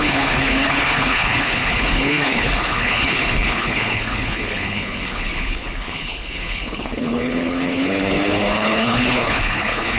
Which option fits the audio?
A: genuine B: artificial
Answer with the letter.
B